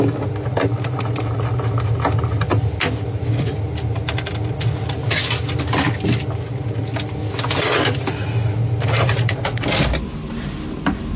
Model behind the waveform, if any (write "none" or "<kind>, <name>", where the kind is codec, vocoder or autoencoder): none